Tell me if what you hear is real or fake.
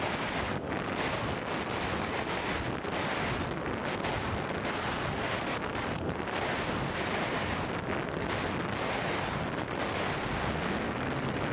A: real